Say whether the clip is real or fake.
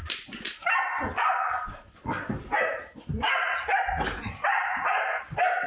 real